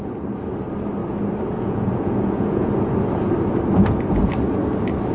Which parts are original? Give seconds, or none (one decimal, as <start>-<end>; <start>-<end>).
0.0-1.0; 2.7-5.1

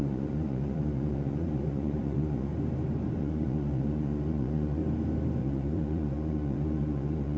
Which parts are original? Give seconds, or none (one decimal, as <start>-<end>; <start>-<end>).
2.5-3.2; 4.8-5.4

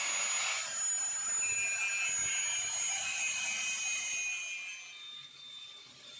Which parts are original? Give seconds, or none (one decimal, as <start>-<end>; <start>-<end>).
0.0-6.2

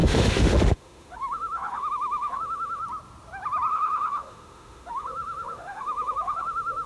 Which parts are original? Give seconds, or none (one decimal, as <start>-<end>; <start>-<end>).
2.8-3.7